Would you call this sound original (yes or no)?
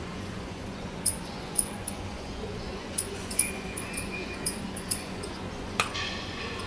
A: no